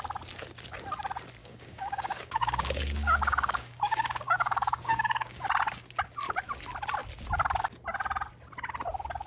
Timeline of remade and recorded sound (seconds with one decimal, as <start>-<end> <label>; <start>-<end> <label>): 0.0-1.4 recorded; 1.4-5.4 remade; 5.4-9.3 recorded